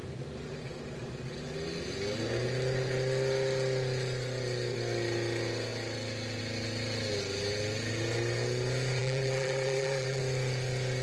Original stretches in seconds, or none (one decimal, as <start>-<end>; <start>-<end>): 0.0-9.0; 10.2-11.0